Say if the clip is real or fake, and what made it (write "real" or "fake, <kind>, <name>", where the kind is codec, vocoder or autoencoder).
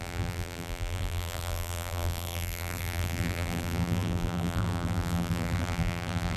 fake, vocoder, BigVGAN v2